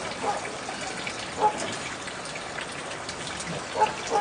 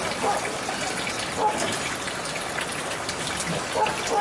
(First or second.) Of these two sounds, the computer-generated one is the second